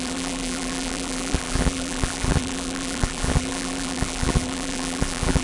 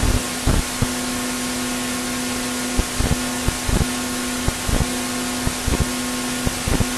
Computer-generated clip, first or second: first